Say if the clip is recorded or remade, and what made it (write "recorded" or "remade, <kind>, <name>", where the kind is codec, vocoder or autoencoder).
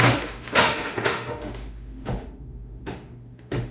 remade, autoencoder, DAC-VAE